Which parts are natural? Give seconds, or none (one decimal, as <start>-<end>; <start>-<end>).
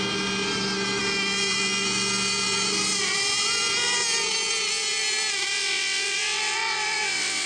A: 0.0-5.5